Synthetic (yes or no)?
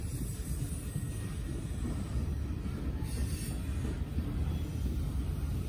no